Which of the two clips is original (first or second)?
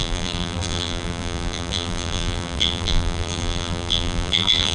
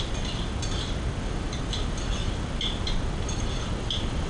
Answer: second